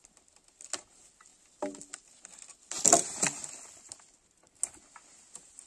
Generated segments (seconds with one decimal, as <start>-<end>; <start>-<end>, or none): none